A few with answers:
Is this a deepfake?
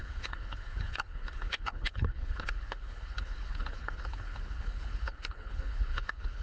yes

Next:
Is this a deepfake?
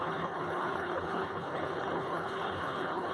yes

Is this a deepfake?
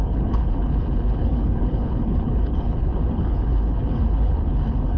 yes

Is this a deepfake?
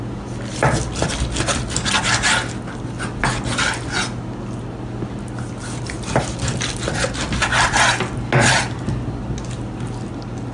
no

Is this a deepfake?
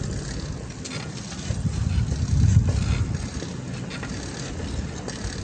no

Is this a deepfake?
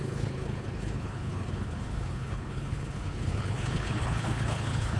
yes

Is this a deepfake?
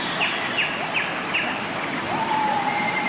no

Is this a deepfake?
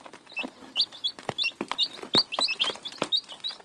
no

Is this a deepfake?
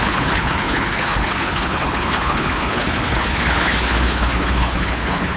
yes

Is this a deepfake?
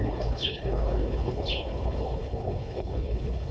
yes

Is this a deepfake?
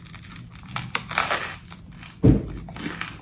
no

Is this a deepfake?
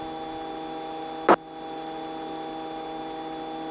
no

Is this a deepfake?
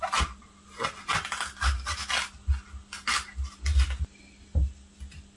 no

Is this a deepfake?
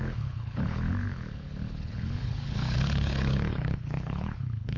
yes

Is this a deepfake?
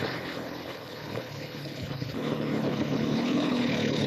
yes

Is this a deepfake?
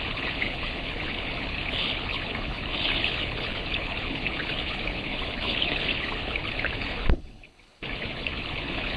yes